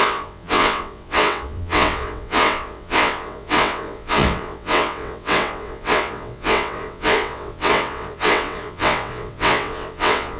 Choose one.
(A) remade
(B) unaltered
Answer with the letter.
A